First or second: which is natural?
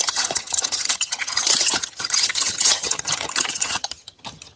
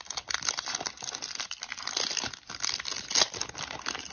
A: second